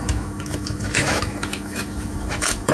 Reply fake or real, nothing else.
fake